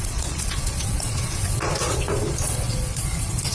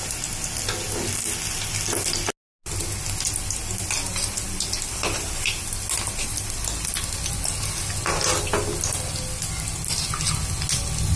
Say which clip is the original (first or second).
second